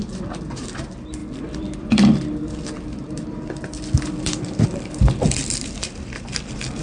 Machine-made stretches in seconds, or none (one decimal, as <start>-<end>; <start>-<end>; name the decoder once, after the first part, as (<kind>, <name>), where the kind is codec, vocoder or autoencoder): 0.0-6.8 (vocoder, BigVGAN v2)